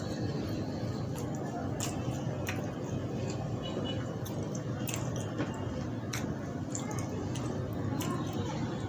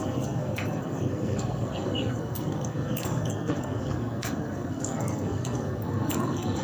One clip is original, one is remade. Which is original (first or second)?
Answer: first